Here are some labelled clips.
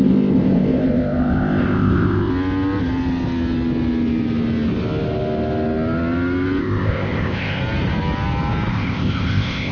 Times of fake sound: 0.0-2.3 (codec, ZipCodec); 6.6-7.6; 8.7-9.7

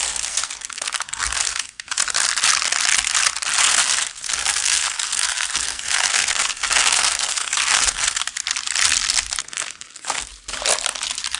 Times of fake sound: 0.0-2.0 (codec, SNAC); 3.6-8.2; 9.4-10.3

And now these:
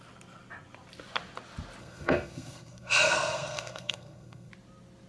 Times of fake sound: 1.8-4.5 (codec, SNAC)

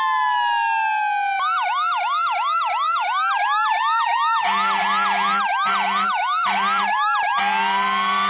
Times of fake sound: none

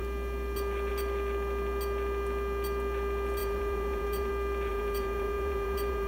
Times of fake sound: 3.4-4.3 (vocoder, Vocos); 4.7-6.1

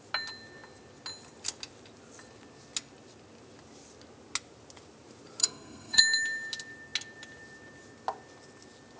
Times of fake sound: 5.4-6.0 (codec, SNAC)

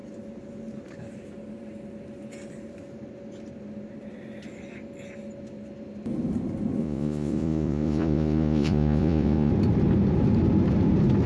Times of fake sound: 6.8-9.5 (vocoder, Vocos)

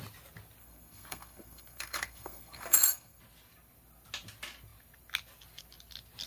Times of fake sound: 0.6-3.2 (codec, SNAC)